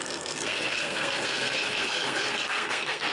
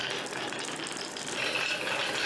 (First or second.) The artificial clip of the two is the first